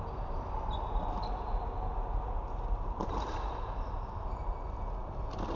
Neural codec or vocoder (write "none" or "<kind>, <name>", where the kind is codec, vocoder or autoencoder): none